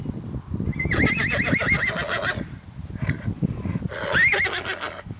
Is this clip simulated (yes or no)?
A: no